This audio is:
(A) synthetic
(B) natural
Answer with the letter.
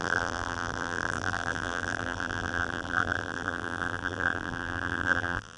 A